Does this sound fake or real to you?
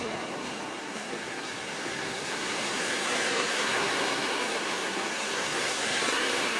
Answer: fake